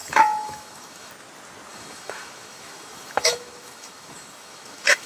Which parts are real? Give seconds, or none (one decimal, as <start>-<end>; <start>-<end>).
1.1-1.7